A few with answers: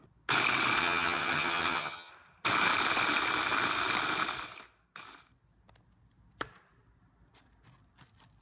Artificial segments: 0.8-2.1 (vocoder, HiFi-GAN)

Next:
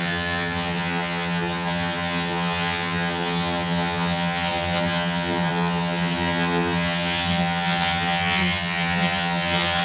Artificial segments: 0.0-9.8 (vocoder, HiFi-GAN)

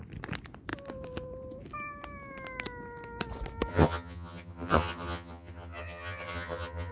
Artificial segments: 3.7-6.9 (vocoder, HiFi-GAN)

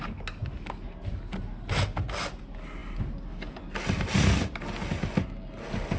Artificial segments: none

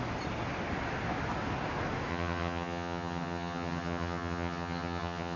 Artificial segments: 2.1-5.4 (vocoder, HiFi-GAN)

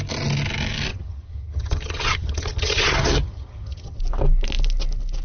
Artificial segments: 0.9-4.0 (vocoder, HiFi-GAN)